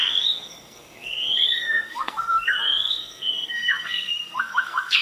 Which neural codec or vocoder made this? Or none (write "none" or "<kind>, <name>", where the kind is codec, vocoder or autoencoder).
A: codec, SNAC